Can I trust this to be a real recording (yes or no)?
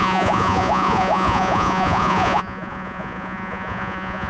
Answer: no